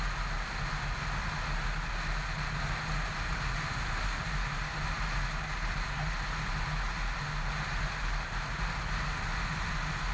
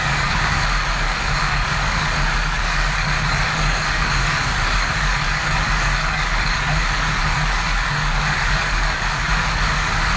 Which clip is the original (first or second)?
first